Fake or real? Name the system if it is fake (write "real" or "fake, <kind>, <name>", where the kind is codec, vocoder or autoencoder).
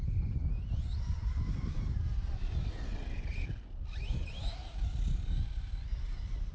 real